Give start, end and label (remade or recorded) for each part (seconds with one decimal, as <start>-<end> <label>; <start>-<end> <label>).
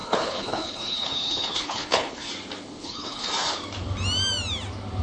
0.0-2.3 remade; 2.3-2.8 recorded; 2.8-3.3 remade; 3.3-5.0 recorded